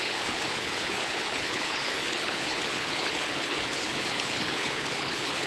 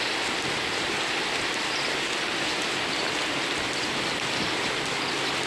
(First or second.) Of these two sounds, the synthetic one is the first